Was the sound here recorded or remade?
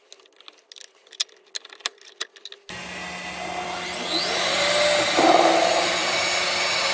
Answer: recorded